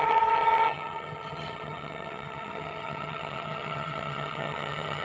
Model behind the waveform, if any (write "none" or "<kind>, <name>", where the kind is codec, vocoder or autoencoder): vocoder, HiFi-GAN